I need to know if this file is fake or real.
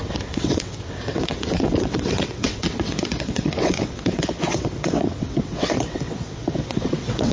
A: fake